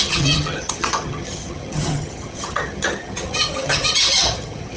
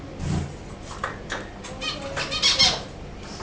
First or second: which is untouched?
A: second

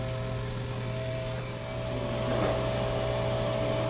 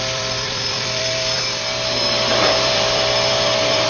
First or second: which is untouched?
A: first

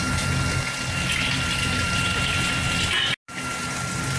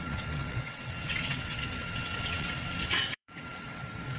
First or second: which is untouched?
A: first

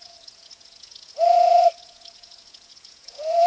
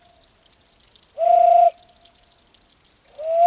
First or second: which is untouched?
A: second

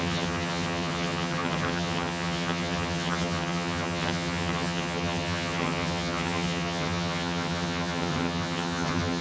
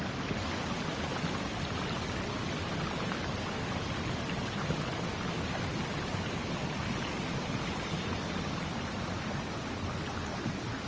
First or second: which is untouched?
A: second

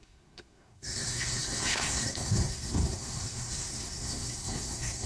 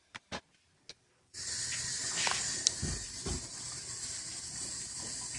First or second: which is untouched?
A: second